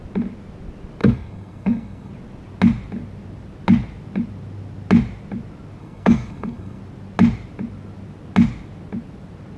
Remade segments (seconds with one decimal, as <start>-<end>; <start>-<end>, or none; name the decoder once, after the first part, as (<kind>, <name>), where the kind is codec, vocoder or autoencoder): 1.0-2.1 (codec, SNAC); 5.8-6.8